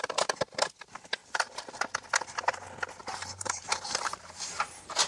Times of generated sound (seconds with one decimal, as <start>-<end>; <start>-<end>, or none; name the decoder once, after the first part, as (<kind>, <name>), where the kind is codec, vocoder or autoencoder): 1.2-1.8 (vocoder, BigVGAN v2); 3.0-5.1